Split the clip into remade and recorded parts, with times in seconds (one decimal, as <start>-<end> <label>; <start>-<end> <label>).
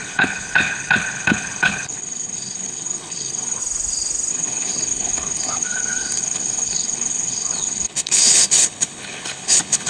0.0-3.6 remade; 3.6-4.3 recorded; 4.3-9.9 remade